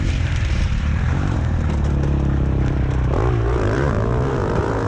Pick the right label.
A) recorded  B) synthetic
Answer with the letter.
B